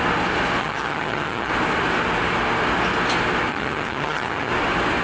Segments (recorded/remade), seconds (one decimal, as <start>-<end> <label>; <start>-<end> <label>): 0.0-0.6 recorded; 0.6-1.5 remade; 1.5-3.5 recorded; 3.5-4.5 remade; 4.5-5.0 recorded